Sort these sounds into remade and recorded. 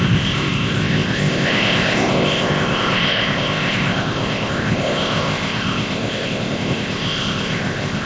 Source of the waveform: remade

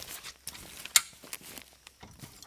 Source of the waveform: recorded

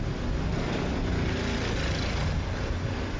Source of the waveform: recorded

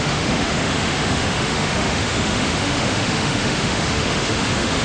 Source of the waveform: remade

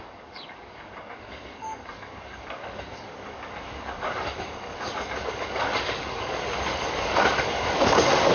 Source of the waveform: remade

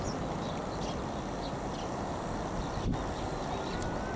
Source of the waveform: recorded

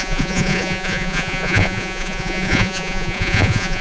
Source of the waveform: remade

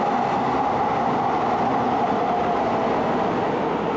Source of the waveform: recorded